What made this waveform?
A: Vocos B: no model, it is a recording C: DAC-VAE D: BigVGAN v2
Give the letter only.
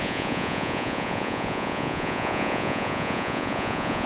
A